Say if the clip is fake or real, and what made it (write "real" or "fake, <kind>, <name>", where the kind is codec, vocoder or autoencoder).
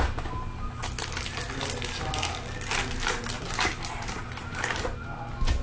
real